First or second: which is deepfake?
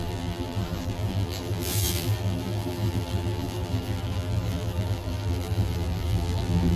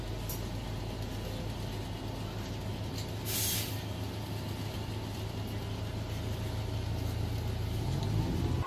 first